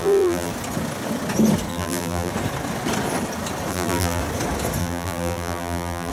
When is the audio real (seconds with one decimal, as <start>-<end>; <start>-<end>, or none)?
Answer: 0.5-1.7; 2.3-3.7; 4.2-4.8